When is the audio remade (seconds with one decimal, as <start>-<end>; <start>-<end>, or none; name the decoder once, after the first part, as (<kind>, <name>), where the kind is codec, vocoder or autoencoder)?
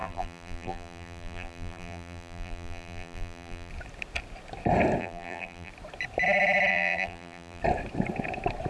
0.0-3.7 (vocoder, BigVGAN v2); 5.0-5.7; 6.7-7.6